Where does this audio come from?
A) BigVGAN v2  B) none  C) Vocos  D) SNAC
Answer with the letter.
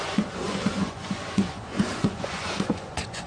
C